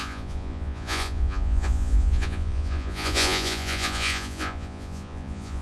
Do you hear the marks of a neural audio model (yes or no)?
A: yes